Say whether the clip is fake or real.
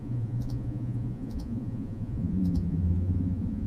fake